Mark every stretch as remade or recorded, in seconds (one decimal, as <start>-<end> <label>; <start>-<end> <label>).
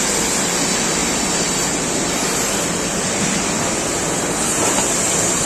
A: 0.0-5.4 recorded